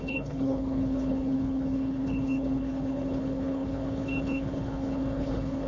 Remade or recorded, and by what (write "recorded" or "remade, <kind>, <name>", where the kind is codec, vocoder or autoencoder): remade, codec, HILCodec